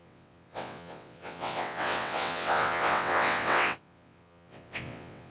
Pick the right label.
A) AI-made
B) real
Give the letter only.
A